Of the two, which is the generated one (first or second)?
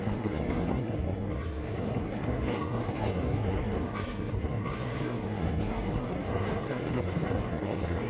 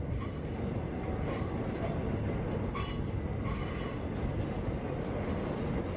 first